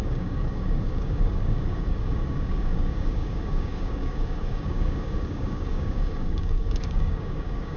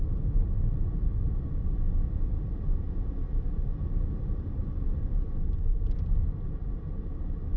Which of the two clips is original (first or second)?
second